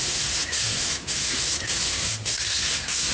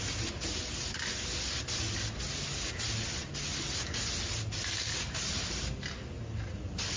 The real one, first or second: second